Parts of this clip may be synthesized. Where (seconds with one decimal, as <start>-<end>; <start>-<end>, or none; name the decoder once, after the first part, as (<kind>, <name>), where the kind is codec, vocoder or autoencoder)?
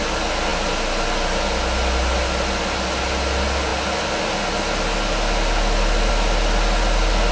none